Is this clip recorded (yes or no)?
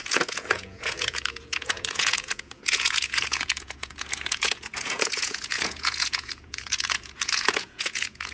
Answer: no